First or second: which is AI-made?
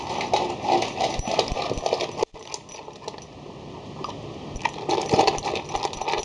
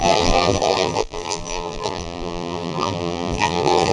second